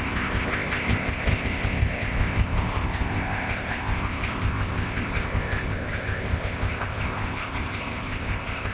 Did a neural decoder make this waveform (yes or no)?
yes